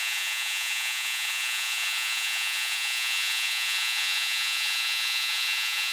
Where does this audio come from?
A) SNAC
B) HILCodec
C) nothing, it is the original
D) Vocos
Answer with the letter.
D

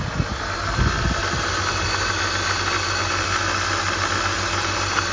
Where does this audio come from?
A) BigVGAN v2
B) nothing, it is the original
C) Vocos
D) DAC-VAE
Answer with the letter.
B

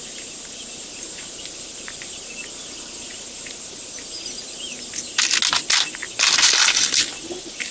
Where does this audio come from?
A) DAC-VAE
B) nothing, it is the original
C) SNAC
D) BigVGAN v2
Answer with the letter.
B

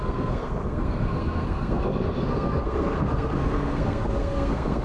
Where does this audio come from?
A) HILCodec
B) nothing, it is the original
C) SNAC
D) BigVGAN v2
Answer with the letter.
C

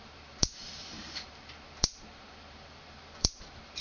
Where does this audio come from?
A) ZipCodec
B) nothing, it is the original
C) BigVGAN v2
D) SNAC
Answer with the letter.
C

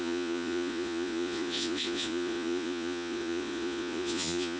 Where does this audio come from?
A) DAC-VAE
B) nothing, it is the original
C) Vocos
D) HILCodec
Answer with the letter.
C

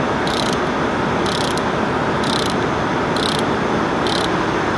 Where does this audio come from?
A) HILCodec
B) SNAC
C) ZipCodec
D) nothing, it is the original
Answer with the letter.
D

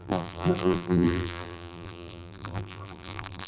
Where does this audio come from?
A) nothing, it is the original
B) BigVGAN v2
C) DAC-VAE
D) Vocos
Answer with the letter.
B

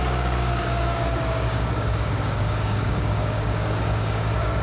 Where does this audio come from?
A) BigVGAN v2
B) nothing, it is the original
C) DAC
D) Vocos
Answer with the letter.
C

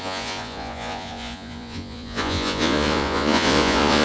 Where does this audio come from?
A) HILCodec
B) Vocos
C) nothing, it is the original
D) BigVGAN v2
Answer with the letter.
B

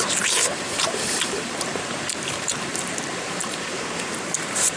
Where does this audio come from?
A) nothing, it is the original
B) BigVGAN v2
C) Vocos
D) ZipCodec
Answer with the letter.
B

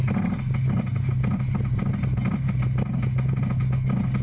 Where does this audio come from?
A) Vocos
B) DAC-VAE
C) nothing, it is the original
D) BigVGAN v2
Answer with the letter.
C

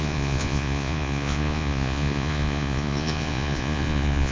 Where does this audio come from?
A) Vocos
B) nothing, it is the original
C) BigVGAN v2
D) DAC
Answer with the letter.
A